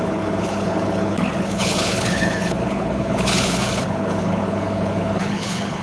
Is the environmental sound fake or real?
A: fake